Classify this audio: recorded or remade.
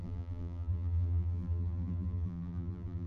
remade